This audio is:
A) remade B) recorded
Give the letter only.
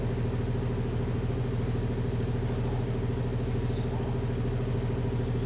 B